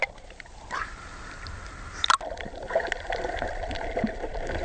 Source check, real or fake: real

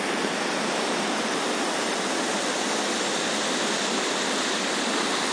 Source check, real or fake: real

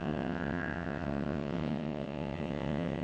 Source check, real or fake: fake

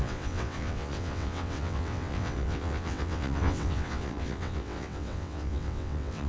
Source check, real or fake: fake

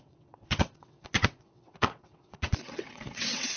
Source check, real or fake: fake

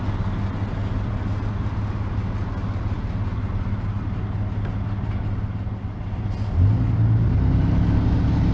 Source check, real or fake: real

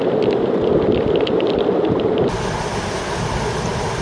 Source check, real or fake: real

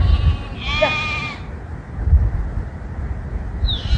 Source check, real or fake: real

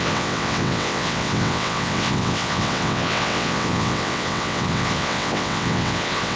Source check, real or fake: fake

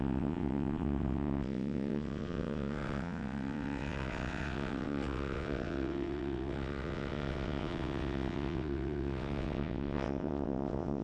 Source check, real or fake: fake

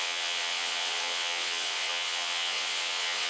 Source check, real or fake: fake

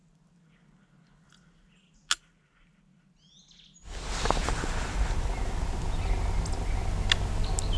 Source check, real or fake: real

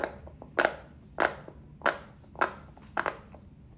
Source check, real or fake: real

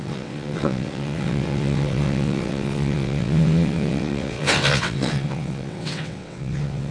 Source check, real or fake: fake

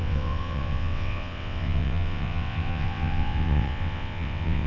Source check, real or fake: fake